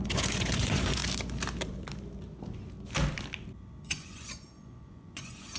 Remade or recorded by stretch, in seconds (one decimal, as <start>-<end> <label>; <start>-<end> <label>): 0.0-1.0 remade; 1.0-3.8 recorded; 3.8-5.6 remade